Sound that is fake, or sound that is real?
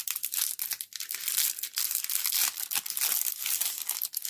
real